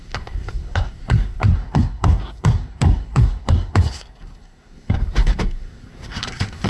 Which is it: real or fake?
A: fake